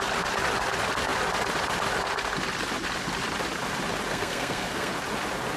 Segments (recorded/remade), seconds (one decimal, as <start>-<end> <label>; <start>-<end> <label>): 0.0-4.1 recorded; 4.1-4.9 remade; 4.9-5.6 recorded